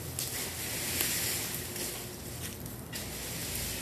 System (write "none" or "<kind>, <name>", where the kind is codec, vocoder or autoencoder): none